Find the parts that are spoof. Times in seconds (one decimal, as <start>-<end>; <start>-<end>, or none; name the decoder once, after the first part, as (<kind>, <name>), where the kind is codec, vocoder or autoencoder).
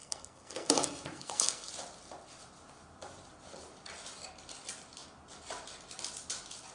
0.0-1.7 (codec, SNAC)